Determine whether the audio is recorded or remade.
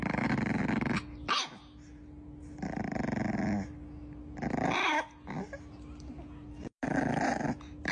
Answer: recorded